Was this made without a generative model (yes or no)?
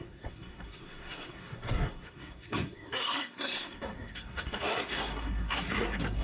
no